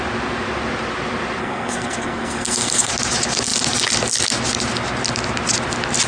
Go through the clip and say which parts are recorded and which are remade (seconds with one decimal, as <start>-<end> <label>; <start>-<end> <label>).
0.0-1.4 recorded; 1.4-2.9 remade; 2.9-6.1 recorded